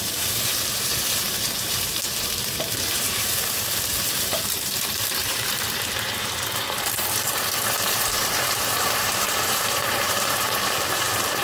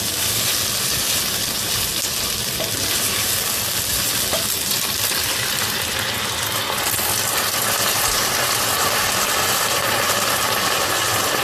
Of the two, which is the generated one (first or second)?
first